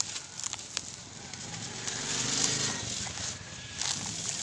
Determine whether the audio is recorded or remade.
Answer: recorded